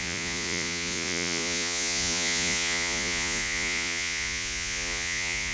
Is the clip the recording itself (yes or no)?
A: no